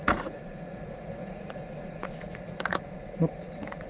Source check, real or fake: fake